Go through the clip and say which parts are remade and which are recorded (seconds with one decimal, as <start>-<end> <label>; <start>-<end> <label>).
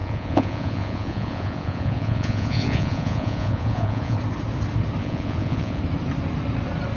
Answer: 0.0-4.2 remade; 4.2-5.0 recorded; 5.0-5.8 remade; 5.8-7.0 recorded